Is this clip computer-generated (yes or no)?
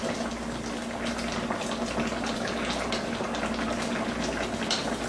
no